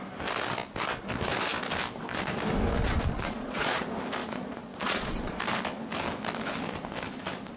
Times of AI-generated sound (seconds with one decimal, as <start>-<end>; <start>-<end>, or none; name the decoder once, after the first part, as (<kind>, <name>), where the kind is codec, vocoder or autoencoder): 2.7-3.8 (vocoder, Vocos); 4.2-5.4